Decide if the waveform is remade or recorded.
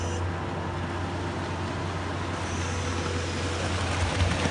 recorded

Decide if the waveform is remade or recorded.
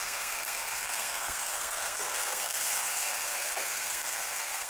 remade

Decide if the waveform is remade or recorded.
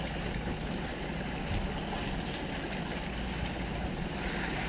recorded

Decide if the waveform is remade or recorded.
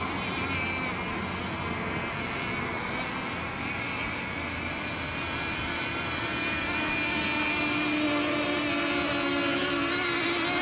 recorded